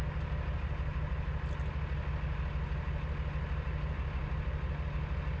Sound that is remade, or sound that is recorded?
recorded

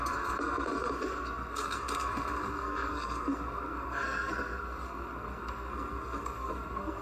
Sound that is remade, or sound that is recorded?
remade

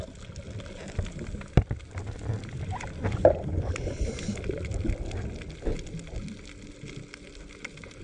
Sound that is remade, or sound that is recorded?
recorded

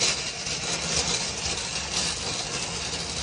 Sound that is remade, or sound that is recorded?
recorded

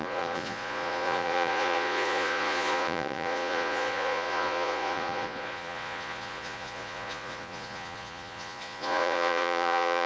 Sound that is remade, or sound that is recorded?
remade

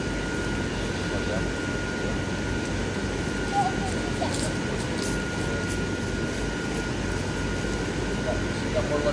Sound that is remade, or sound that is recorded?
recorded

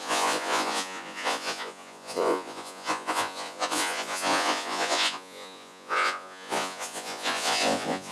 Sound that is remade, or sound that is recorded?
remade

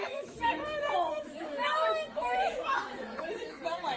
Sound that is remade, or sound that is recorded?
remade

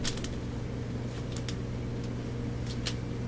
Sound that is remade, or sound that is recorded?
recorded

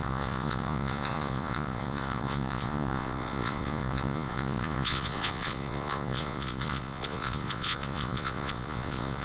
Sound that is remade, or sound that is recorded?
remade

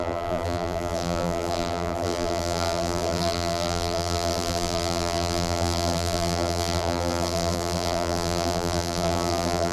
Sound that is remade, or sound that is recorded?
remade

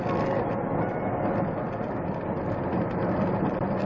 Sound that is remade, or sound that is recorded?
recorded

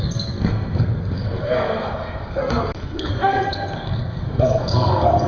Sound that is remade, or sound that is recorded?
remade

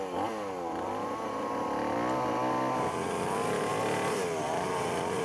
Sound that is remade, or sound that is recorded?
recorded